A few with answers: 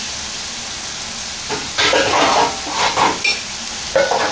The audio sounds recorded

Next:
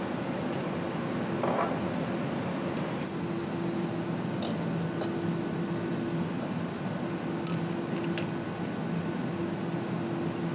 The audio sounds recorded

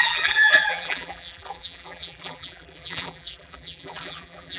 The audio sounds remade